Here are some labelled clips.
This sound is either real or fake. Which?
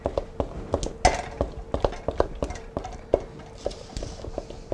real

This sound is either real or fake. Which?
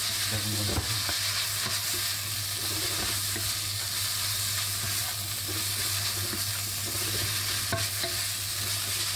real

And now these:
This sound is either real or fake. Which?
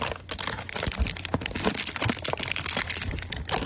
real